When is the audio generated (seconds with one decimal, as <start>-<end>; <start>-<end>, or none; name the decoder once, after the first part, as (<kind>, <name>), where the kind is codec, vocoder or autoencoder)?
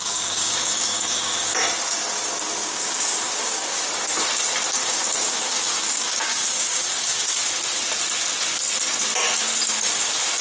0.0-1.6 (codec, DAC); 2.6-3.9; 4.8-7.4